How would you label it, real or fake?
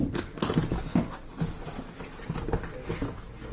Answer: real